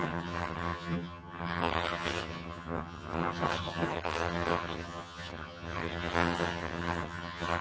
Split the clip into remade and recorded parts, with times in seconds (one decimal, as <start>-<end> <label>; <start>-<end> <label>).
0.0-7.6 remade